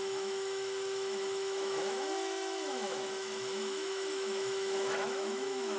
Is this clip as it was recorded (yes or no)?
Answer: no